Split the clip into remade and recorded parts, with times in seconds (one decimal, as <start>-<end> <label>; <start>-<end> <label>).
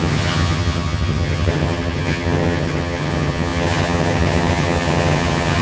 0.0-5.6 remade